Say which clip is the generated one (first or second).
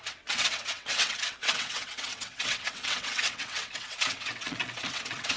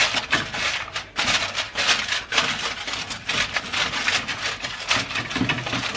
first